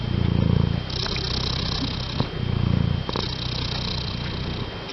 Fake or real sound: real